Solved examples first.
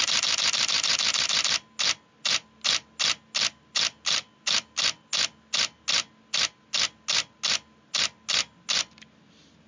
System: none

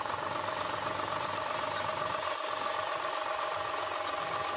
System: none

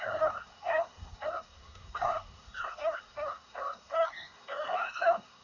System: codec, SNAC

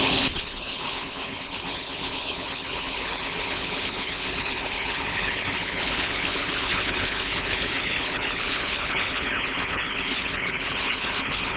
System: codec, HILCodec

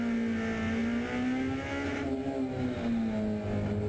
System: none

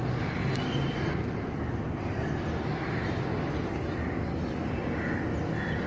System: none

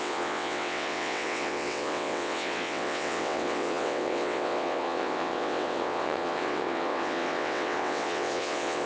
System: vocoder, WaveNeXt